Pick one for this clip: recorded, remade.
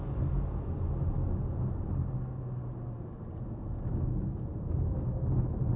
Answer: recorded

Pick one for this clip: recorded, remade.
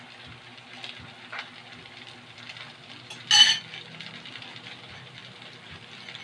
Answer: recorded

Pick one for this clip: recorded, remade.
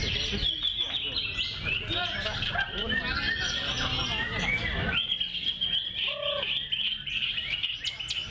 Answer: recorded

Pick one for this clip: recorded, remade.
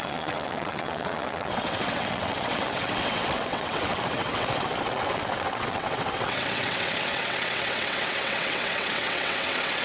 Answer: remade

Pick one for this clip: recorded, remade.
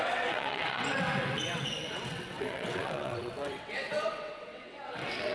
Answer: remade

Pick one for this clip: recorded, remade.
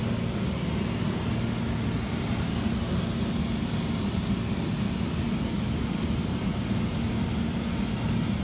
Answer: recorded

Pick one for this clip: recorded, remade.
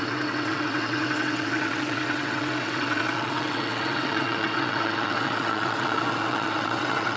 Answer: remade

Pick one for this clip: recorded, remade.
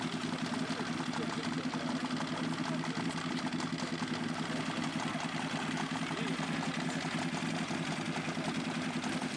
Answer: recorded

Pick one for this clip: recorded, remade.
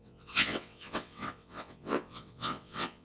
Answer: remade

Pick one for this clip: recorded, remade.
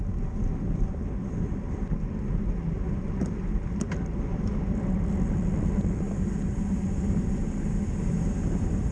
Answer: recorded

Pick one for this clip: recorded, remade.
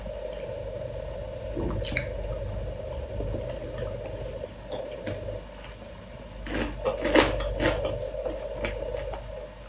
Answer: recorded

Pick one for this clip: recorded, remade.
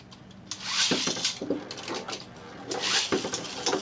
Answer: recorded